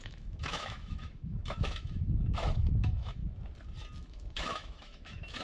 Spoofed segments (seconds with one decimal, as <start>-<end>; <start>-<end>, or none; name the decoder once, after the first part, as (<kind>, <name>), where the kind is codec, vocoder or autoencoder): 0.0-3.2 (autoencoder, DAC-VAE); 4.0-5.4